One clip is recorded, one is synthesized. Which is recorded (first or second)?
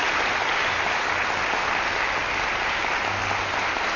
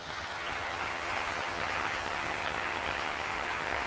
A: first